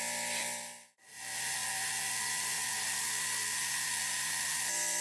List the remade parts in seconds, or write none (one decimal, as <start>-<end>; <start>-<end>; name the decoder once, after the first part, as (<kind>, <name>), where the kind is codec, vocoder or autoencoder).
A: none